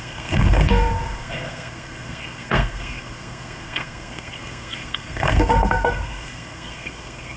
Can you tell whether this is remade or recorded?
remade